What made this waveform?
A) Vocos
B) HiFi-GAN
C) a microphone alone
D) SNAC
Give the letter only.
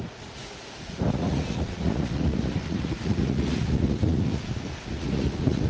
A